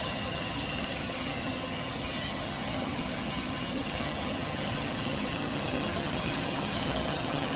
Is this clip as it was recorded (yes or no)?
no